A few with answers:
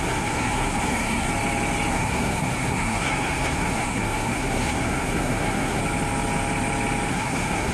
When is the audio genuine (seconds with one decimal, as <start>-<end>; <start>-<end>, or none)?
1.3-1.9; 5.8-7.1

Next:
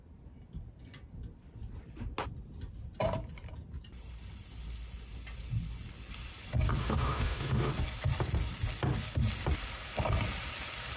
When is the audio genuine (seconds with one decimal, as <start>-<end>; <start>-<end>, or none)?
0.0-6.8; 7.7-11.0

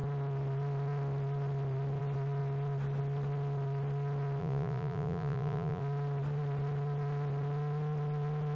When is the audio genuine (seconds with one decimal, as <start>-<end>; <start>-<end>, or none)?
0.0-4.4; 5.8-8.6

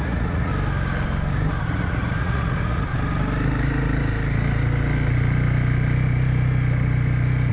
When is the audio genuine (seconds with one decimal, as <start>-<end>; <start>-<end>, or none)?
0.5-1.6; 2.9-7.5

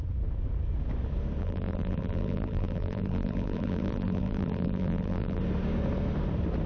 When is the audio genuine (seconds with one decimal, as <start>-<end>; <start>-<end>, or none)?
0.0-1.4; 5.4-6.7

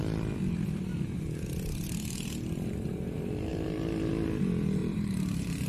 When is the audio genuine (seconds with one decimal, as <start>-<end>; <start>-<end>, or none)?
0.0-3.5; 4.1-4.8

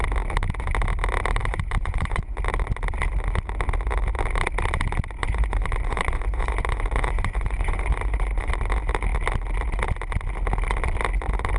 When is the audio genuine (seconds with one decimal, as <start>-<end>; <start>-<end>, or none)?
0.0-1.4; 2.4-5.2; 8.5-11.6